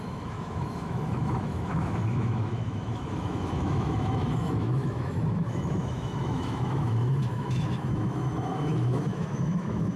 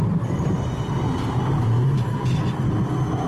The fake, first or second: first